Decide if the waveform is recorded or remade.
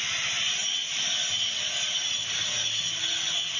recorded